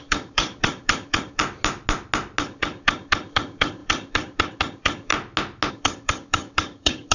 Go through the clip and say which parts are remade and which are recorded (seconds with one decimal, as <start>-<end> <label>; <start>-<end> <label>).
0.0-1.4 remade; 1.4-2.4 recorded; 2.4-5.1 remade; 5.1-5.7 recorded; 5.7-7.1 remade